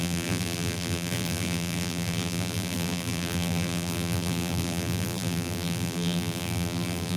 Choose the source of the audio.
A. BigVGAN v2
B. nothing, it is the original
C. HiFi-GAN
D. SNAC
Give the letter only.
A